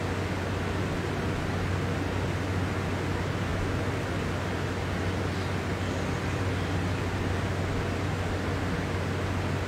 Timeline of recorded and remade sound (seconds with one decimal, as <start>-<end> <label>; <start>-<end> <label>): 0.0-9.7 recorded